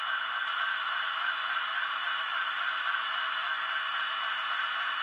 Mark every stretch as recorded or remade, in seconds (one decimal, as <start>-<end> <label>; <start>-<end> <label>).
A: 0.0-0.7 recorded; 0.7-3.7 remade; 3.7-5.0 recorded